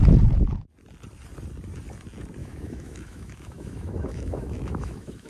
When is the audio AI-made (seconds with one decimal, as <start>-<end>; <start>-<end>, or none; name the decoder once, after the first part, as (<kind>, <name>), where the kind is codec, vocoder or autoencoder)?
2.4-5.3 (autoencoder, DAC-VAE)